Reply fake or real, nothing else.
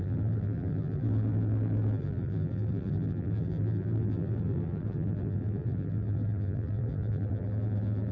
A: fake